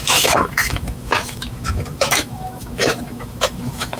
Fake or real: fake